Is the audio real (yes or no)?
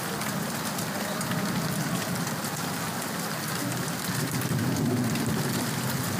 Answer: yes